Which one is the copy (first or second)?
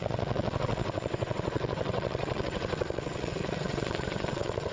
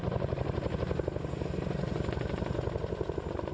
first